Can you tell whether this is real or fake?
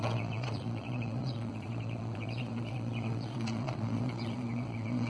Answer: fake